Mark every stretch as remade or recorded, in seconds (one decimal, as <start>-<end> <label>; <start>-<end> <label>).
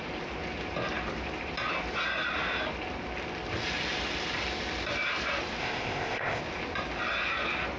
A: 0.0-5.6 recorded; 5.6-6.4 remade; 6.4-7.8 recorded